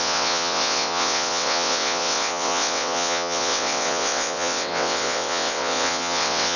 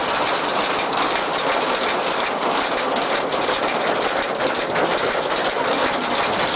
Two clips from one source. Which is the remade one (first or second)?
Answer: first